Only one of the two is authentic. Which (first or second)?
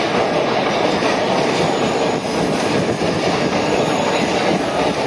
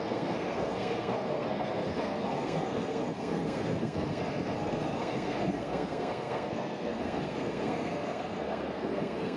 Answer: first